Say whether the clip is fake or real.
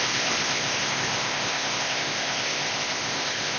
fake